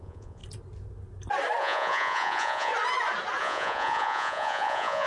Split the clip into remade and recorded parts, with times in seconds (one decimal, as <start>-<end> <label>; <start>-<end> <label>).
0.0-0.4 remade; 0.4-1.6 recorded; 1.6-2.7 remade; 2.7-3.4 recorded; 3.4-5.1 remade